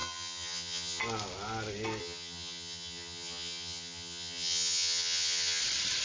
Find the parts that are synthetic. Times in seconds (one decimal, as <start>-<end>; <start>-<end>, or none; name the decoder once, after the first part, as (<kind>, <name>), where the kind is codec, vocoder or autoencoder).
0.0-1.0 (vocoder, HiFi-GAN); 2.0-5.6